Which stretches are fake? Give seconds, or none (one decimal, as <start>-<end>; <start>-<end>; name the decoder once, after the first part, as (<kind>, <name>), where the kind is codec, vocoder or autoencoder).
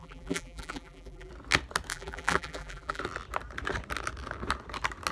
0.0-1.3 (vocoder, BigVGAN v2); 1.9-3.0